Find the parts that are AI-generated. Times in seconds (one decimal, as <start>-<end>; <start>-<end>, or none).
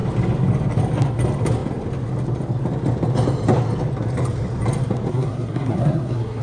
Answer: 5.1-6.4